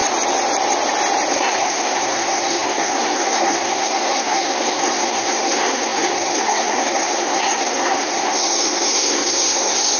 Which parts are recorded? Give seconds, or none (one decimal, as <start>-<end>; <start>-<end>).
0.0-1.3